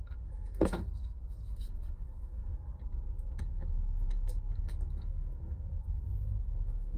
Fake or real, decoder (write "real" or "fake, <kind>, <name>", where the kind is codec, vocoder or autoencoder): fake, codec, SNAC